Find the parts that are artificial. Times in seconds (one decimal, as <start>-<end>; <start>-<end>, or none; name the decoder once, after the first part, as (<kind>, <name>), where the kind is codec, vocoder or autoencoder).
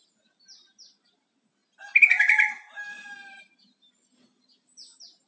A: none